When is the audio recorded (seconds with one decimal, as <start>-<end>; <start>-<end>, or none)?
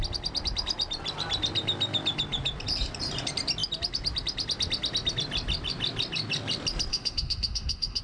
0.0-6.9